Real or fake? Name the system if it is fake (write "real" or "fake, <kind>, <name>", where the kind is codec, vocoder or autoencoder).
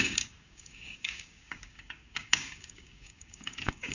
fake, codec, DAC